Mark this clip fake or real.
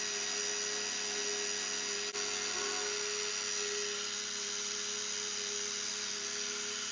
real